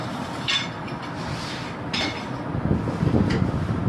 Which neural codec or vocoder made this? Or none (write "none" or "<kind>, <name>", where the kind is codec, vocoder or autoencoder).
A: none